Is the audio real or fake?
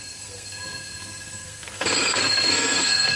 fake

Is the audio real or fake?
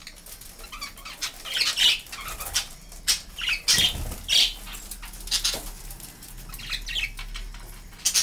real